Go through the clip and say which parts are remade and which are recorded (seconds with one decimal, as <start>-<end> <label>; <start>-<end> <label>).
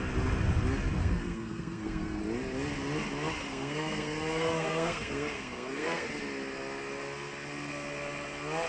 0.0-1.0 recorded; 1.0-2.2 remade; 2.2-3.4 recorded; 3.4-6.1 remade; 6.1-8.7 recorded